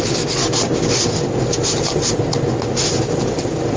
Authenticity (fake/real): real